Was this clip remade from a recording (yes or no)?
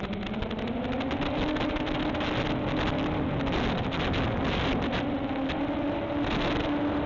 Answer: no